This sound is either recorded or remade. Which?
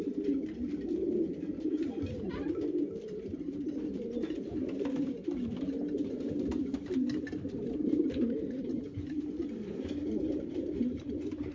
remade